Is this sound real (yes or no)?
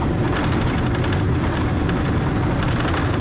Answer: yes